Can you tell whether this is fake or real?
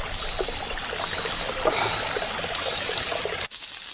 real